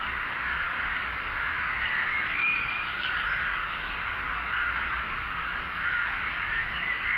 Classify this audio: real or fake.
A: fake